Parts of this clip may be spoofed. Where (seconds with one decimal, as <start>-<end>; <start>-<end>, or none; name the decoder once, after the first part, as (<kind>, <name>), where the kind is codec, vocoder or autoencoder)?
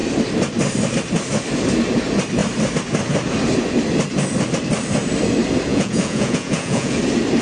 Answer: 5.7-7.0 (vocoder, Vocos)